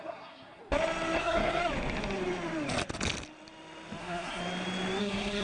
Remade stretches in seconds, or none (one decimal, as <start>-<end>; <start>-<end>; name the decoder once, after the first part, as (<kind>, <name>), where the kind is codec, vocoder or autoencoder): 0.0-0.6 (codec, SNAC); 1.2-1.6; 4.0-4.4; 5.0-5.4